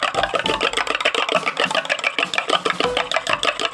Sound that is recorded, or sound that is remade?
recorded